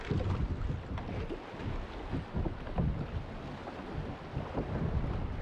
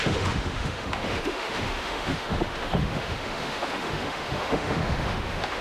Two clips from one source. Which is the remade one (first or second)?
second